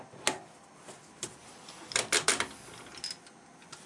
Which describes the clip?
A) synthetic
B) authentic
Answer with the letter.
B